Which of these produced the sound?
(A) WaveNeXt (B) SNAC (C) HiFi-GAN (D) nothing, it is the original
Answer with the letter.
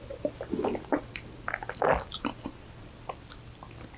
D